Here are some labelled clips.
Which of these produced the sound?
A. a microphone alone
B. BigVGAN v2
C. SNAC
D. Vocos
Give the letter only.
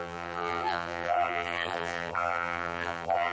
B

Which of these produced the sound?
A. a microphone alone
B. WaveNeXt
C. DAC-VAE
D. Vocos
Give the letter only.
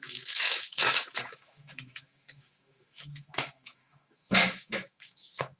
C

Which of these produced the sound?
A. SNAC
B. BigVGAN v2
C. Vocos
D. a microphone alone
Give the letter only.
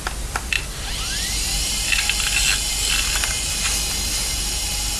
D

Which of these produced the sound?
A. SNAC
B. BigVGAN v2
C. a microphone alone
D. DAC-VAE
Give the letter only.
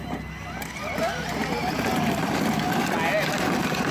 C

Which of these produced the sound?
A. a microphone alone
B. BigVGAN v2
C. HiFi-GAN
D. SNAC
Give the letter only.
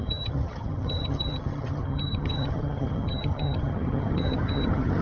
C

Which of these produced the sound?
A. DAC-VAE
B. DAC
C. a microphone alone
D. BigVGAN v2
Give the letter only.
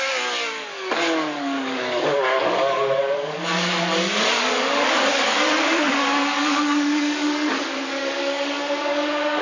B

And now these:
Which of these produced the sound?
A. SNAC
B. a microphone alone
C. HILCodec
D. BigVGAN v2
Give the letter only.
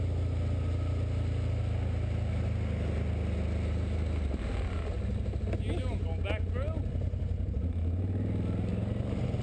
B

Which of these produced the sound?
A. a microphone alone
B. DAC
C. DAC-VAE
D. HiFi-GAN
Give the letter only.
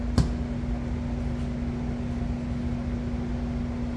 A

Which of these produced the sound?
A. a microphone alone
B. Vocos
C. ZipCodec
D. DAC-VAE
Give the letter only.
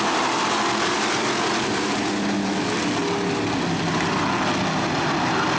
A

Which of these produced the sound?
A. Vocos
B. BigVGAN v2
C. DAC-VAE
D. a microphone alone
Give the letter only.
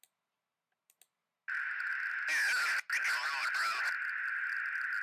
D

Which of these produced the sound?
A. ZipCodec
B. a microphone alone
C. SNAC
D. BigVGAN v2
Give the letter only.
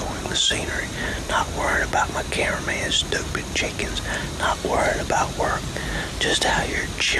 B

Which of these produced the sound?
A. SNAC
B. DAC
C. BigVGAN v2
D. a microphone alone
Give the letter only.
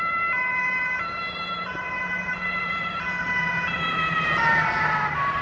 C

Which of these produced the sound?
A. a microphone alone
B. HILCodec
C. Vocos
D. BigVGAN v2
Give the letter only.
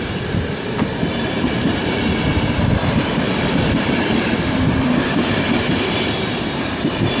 D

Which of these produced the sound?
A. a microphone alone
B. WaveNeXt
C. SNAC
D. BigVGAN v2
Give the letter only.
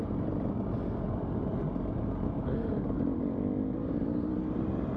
A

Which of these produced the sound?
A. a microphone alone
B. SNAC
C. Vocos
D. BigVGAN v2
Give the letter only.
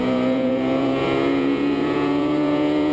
C